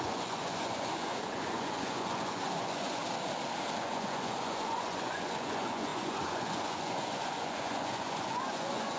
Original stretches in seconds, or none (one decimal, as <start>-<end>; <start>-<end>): 3.0-3.8